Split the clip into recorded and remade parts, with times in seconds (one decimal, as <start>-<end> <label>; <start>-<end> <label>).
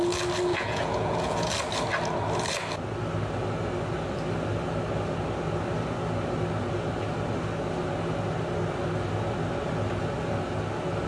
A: 0.0-0.5 recorded; 0.5-1.5 remade; 1.5-11.1 recorded